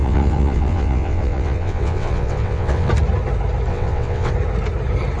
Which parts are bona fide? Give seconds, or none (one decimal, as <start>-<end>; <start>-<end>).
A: 2.9-3.7; 4.3-5.2